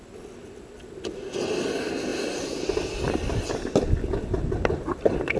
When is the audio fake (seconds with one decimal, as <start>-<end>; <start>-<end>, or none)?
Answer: none